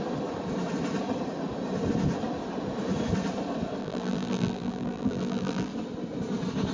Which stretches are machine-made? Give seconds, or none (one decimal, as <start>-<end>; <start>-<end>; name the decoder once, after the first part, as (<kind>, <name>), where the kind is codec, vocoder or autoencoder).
3.8-5.7 (vocoder, BigVGAN v2)